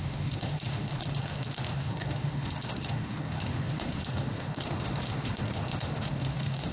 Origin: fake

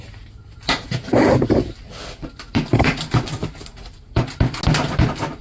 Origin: real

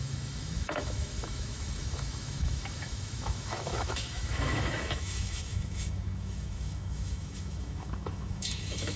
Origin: fake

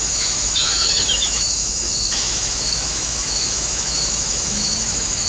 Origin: fake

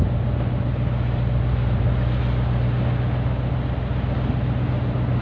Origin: real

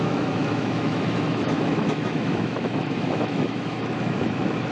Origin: fake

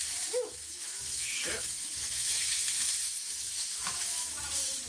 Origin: fake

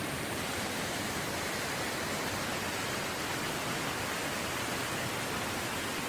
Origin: real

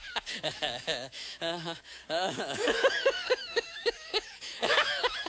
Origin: fake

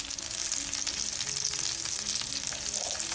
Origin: real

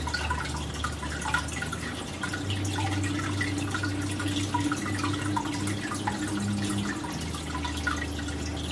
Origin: real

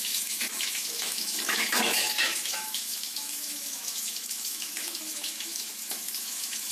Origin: fake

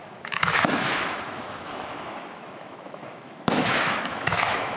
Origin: fake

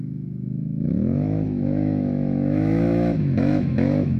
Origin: fake